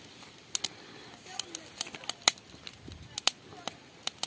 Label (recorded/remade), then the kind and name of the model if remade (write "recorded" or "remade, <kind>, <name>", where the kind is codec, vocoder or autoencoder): recorded